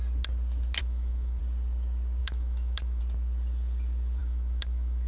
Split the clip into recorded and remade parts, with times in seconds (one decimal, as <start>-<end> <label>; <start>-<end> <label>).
0.0-0.8 recorded; 0.8-1.4 remade; 1.4-2.2 recorded; 2.2-3.0 remade; 3.0-4.2 recorded; 4.2-5.1 remade